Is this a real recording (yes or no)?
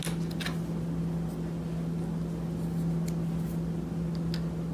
yes